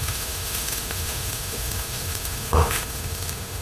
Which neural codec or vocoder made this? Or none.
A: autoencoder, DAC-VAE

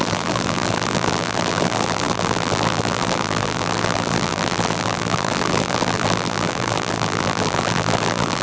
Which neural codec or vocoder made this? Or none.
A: vocoder, BigVGAN v2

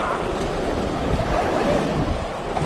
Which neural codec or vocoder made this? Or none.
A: none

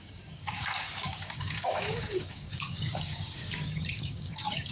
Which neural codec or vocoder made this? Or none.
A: codec, DAC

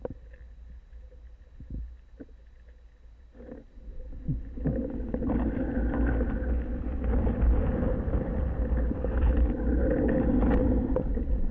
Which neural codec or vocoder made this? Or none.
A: none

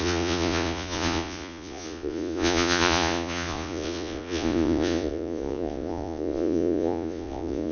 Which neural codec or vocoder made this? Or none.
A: vocoder, Vocos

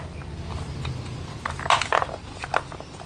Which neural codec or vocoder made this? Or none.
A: none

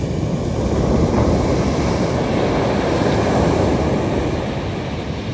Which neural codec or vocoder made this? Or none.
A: none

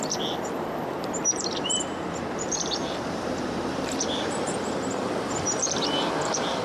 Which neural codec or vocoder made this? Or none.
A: vocoder, BigVGAN v2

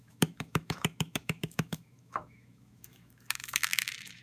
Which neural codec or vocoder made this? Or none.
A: autoencoder, DAC-VAE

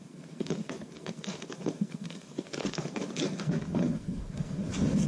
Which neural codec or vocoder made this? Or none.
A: codec, SNAC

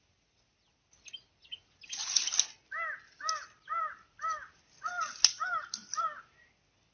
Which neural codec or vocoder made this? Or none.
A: none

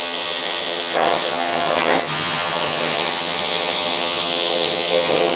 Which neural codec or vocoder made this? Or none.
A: vocoder, HiFi-GAN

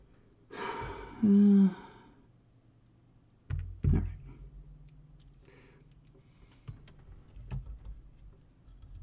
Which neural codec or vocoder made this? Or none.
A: none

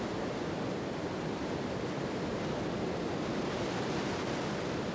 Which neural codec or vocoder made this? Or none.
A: none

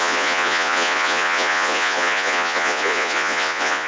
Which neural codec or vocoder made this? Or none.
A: vocoder, Vocos